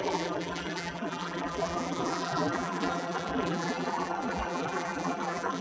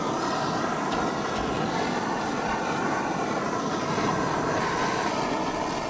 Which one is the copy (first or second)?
first